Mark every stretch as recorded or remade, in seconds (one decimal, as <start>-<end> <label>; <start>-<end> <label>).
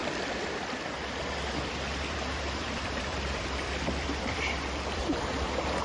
0.0-5.8 remade